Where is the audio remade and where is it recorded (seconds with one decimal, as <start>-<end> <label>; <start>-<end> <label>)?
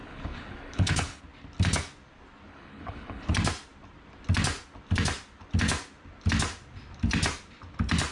0.0-1.2 remade; 1.2-2.5 recorded; 2.5-3.3 remade; 3.3-8.1 recorded